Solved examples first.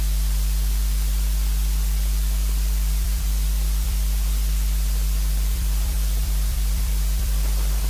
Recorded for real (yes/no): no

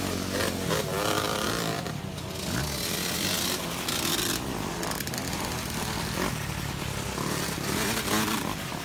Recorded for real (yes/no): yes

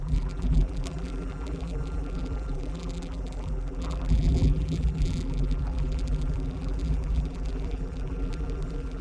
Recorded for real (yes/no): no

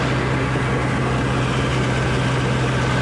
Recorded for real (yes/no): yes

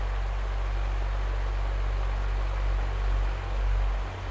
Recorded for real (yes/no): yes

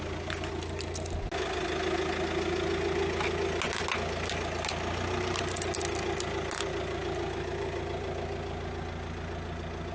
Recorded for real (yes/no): yes